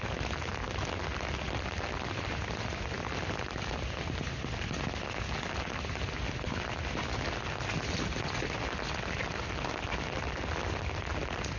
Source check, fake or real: real